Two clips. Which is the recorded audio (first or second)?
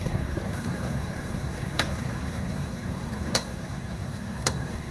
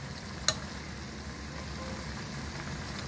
second